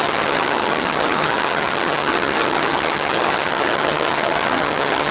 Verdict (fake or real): fake